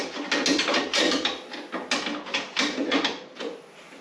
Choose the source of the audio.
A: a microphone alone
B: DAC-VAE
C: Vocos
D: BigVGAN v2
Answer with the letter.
A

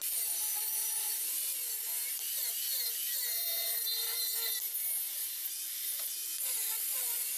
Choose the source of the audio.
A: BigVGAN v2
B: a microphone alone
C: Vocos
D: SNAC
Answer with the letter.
B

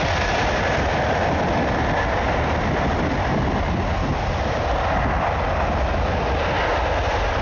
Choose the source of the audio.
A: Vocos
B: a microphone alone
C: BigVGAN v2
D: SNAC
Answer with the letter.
B